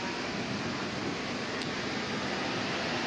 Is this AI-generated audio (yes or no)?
no